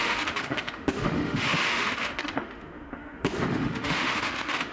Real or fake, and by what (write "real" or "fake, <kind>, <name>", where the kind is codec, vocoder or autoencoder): fake, autoencoder, DAC-VAE